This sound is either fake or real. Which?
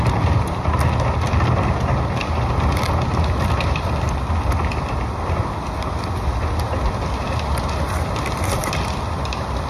real